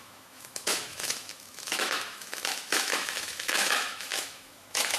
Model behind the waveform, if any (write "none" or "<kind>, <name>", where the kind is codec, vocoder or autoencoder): autoencoder, DAC-VAE